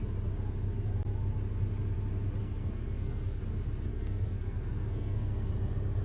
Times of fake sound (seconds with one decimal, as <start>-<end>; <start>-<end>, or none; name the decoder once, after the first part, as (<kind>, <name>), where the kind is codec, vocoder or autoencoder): 2.4-3.4 (codec, SNAC); 3.9-5.5